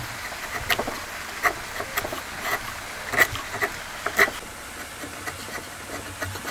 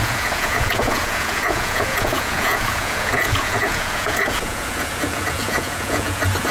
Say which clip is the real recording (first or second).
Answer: first